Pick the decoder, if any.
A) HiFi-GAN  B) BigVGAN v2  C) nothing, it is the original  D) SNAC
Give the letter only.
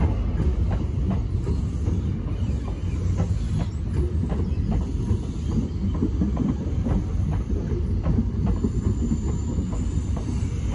C